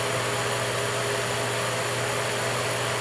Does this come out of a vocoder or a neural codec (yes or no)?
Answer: no